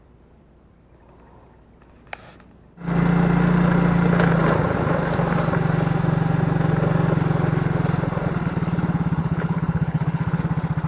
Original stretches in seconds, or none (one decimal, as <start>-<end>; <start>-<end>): 0.0-9.2; 10.4-10.9